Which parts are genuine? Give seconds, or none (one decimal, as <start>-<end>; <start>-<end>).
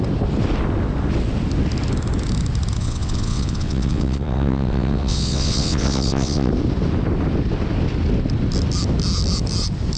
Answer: 0.0-2.8; 6.5-10.0